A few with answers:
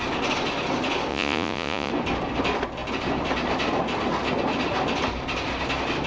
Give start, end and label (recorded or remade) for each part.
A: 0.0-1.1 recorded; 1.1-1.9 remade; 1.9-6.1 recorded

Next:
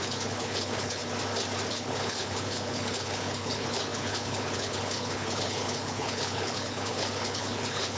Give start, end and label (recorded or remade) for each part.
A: 0.0-1.0 remade; 1.0-1.7 recorded; 1.7-8.0 remade

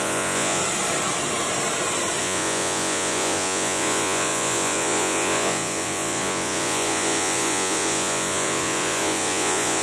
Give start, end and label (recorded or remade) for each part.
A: 0.0-0.6 remade; 0.6-2.2 recorded; 2.2-9.8 remade

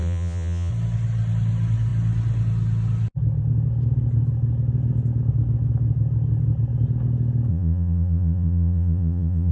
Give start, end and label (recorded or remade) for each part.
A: 0.0-0.7 remade; 0.7-7.5 recorded; 7.5-9.5 remade

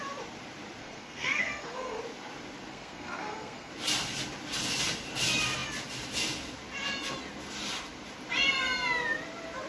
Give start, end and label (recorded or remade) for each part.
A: 0.0-0.8 recorded; 0.8-2.0 remade; 2.0-2.7 recorded; 2.7-3.7 remade; 3.7-9.7 recorded

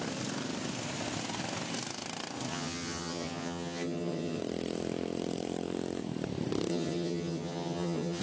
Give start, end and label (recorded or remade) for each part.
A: 0.0-2.5 recorded; 2.5-4.4 remade; 4.4-6.7 recorded; 6.7-8.2 remade